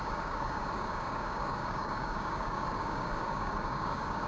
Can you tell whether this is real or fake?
fake